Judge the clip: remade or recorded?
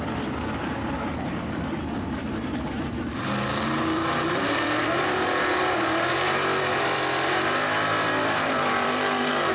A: remade